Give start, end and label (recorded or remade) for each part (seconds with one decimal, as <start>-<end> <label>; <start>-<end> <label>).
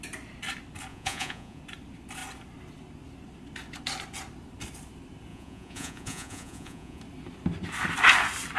0.0-0.9 recorded; 0.9-1.6 remade; 1.6-5.3 recorded; 5.3-7.0 remade; 7.0-8.6 recorded